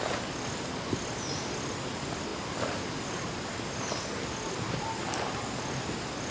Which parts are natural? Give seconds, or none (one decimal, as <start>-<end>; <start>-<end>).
0.0-6.3